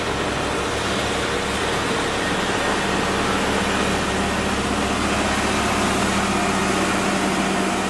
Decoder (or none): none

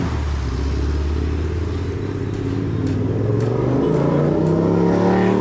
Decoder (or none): none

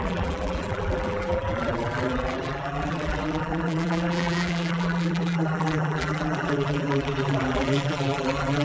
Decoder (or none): vocoder, BigVGAN v2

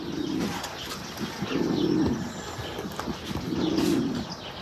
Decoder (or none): none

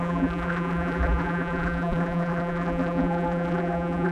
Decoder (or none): vocoder, BigVGAN v2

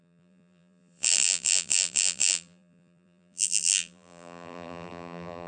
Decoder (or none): vocoder, BigVGAN v2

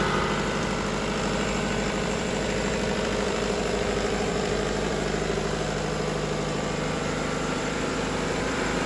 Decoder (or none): vocoder, BigVGAN v2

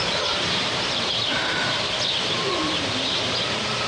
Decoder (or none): vocoder, BigVGAN v2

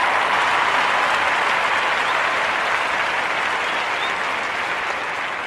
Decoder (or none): none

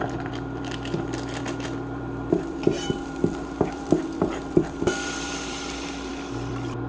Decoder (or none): vocoder, BigVGAN v2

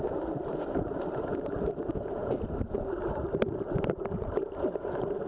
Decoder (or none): none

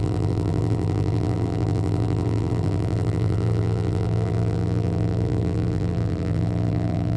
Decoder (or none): vocoder, BigVGAN v2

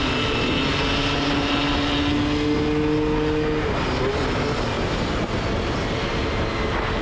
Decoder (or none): none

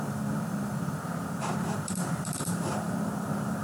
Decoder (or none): vocoder, BigVGAN v2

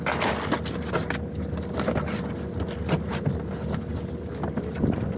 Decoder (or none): none